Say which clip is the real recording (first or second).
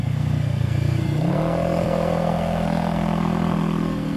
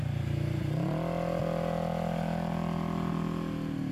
second